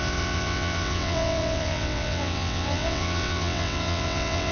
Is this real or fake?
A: fake